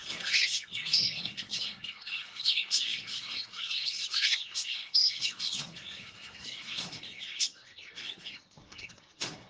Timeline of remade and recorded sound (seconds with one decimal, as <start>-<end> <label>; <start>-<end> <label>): 0.0-9.5 remade